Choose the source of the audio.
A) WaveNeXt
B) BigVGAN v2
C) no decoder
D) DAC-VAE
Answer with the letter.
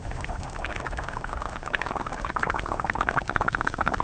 D